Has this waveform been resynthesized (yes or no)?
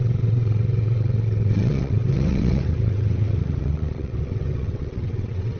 yes